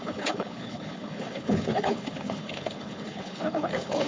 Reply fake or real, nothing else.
fake